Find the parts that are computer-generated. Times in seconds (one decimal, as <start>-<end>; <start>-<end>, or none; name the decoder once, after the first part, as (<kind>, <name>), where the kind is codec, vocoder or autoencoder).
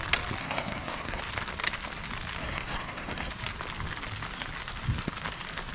0.4-1.2 (codec, SNAC); 2.4-3.3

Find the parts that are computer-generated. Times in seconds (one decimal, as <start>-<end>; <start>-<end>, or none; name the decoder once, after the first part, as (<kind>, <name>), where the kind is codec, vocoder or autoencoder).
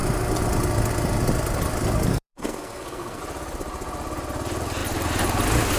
2.1-3.2 (codec, SNAC)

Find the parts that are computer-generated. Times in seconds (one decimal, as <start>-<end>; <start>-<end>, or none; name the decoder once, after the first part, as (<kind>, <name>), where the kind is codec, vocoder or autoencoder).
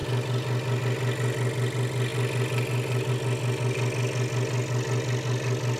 none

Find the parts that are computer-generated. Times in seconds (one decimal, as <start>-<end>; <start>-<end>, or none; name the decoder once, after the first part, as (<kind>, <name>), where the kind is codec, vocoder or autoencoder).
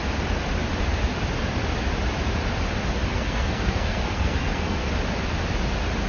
3.1-4.9 (codec, SNAC)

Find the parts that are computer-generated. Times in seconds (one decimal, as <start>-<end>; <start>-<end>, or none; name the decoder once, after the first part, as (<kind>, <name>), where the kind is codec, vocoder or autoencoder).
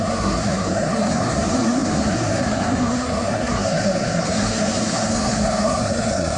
0.0-6.4 (codec, SNAC)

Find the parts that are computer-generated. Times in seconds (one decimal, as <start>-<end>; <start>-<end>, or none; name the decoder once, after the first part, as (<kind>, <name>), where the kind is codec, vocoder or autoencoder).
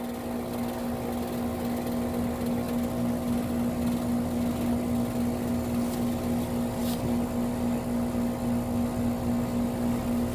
none